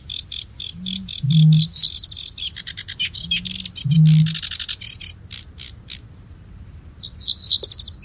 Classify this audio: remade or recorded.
recorded